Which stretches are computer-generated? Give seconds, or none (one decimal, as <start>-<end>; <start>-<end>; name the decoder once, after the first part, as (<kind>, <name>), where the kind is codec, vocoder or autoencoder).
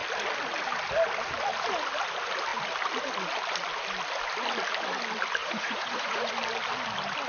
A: 5.4-6.3 (vocoder, Vocos)